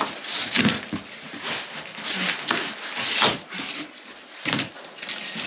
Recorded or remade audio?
recorded